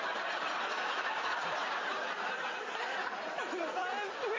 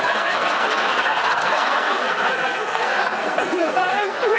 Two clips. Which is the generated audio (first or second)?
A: second